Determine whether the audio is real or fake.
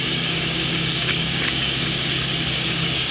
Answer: fake